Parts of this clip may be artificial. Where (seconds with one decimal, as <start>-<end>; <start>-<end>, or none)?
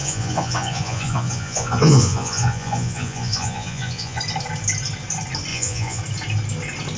0.0-4.2; 5.5-6.0